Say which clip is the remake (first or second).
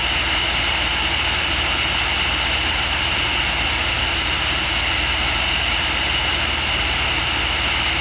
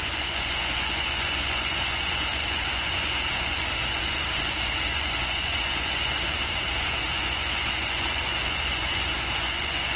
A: second